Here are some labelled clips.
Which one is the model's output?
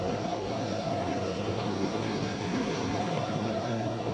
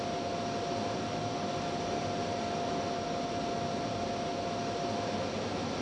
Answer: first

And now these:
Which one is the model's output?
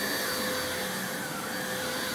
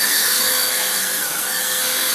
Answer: second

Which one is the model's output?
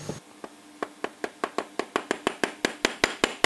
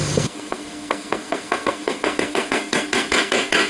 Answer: second